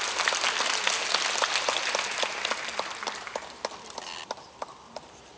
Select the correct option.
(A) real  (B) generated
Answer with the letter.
A